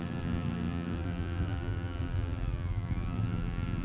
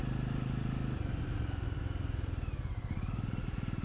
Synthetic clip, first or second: first